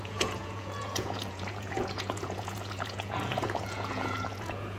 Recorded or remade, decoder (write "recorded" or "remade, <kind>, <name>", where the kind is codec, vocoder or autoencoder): remade, vocoder, Vocos